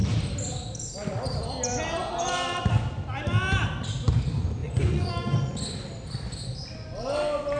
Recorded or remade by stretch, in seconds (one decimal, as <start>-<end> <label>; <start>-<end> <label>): 0.0-4.6 recorded; 4.6-5.1 remade; 5.1-7.6 recorded